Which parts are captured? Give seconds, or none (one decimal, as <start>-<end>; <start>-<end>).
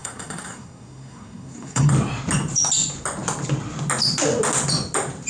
1.9-5.3